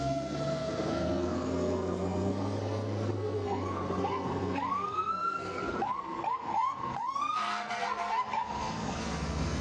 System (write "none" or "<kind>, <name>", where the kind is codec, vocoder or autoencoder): codec, SNAC